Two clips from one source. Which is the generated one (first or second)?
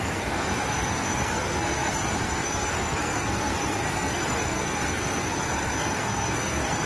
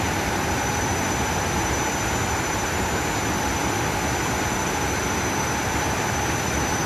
first